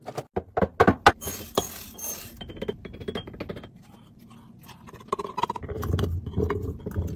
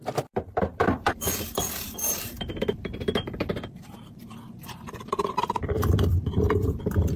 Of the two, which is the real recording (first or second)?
first